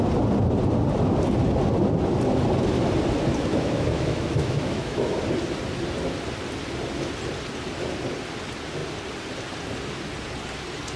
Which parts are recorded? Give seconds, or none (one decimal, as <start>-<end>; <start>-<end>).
0.0-3.5; 5.2-11.0